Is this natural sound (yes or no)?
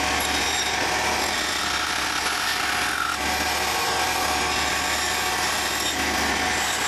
yes